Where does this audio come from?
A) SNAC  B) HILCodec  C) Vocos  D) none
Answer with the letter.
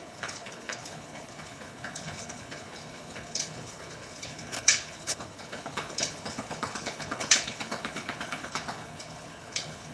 B